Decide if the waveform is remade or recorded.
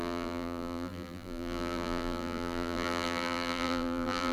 remade